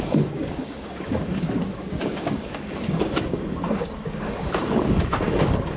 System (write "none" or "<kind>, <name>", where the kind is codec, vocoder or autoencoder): codec, DAC